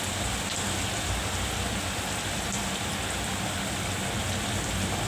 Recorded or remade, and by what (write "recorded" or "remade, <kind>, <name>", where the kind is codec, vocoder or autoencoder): recorded